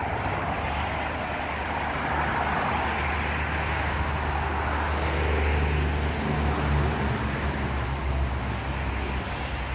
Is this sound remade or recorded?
recorded